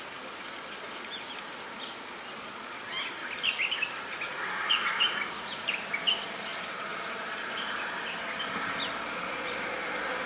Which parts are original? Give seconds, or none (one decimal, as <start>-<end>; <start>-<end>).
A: 0.0-10.3